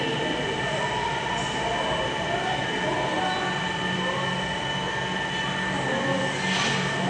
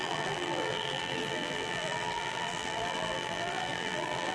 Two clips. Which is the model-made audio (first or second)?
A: second